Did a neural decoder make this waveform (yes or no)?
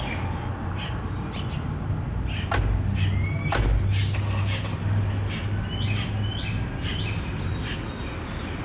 no